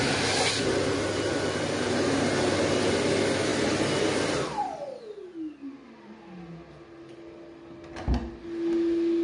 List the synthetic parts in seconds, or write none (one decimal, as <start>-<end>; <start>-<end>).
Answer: none